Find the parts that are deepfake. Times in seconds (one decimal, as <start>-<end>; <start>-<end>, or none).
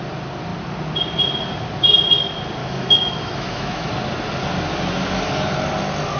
2.6-3.9